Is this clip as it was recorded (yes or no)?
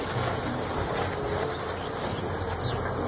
yes